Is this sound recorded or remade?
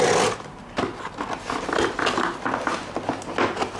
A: recorded